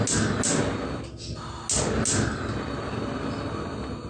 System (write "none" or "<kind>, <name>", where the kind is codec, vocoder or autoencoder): none